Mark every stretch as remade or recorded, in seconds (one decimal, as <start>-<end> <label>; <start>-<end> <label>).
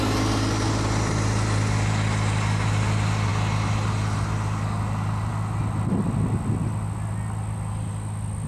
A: 0.0-8.5 recorded